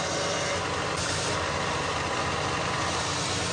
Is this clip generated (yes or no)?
no